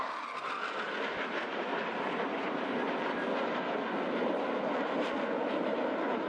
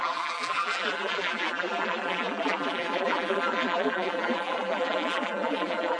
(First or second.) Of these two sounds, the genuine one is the first